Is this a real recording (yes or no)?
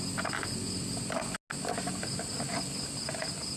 yes